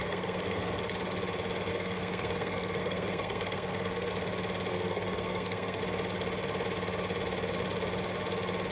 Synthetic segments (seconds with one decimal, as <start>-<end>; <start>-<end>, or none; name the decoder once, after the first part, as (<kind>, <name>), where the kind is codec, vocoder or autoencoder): 0.0-0.8 (codec, SNAC); 1.7-4.1; 4.7-5.8